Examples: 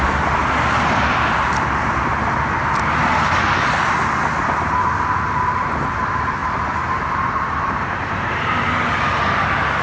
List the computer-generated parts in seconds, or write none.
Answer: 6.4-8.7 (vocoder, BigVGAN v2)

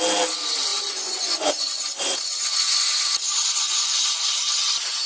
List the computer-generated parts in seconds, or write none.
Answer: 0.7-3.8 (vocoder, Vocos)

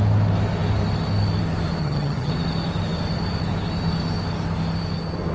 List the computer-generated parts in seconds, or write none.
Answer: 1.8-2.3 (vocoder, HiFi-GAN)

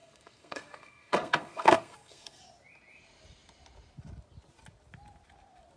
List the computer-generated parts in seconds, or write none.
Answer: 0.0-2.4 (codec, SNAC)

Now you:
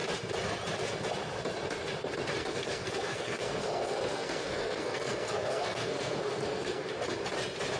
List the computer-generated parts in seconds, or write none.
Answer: 2.4-6.9 (codec, SNAC)

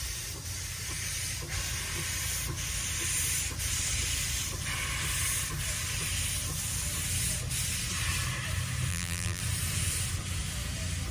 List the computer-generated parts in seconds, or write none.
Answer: 8.9-9.4 (vocoder, BigVGAN v2)

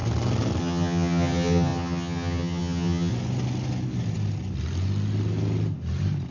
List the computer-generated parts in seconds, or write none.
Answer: 0.6-3.1 (vocoder, HiFi-GAN)

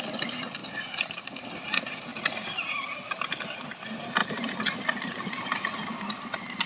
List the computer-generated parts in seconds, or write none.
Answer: none